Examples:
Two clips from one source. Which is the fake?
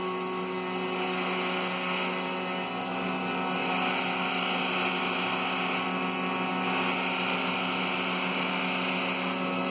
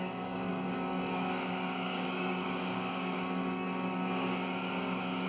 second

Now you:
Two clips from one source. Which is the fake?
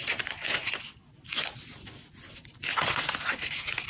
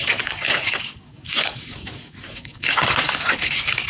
second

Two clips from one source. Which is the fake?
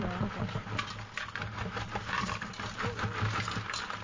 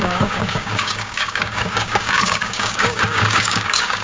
second